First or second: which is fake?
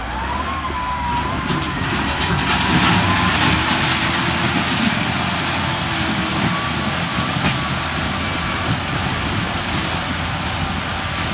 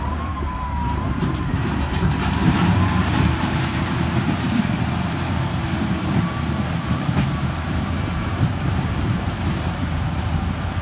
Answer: second